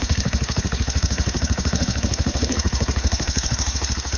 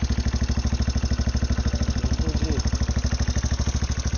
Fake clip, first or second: first